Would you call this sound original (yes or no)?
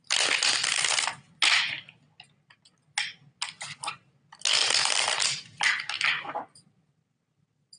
yes